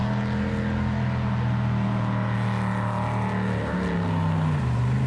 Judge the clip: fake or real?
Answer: real